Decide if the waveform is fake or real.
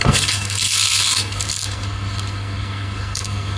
fake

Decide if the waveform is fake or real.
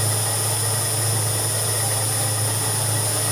real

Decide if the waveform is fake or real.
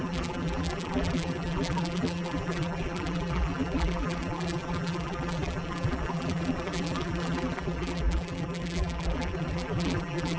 fake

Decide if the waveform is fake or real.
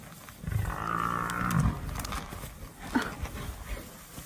real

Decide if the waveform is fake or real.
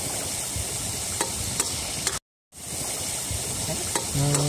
real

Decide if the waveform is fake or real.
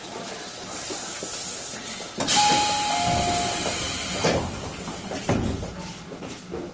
real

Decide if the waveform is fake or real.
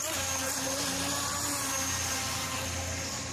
real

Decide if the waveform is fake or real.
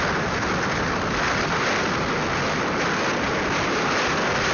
real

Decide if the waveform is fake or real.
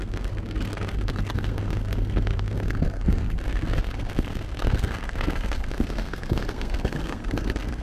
fake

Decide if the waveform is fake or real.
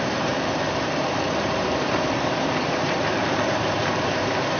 fake